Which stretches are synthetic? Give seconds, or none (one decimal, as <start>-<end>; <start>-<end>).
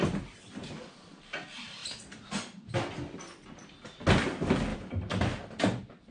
1.8-2.9; 4.7-5.6